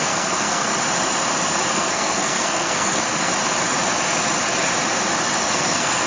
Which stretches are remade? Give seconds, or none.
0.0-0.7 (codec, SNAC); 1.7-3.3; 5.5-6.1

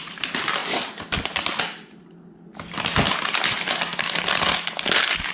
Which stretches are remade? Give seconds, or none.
none

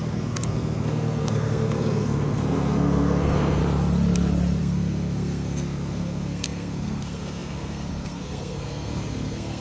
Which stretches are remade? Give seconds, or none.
0.0-3.6 (codec, SNAC); 4.6-9.6

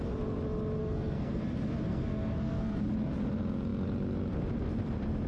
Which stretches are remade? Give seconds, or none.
0.8-1.4 (codec, SNAC); 1.9-2.8

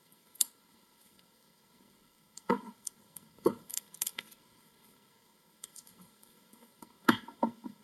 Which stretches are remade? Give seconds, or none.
0.0-7.8 (codec, SNAC)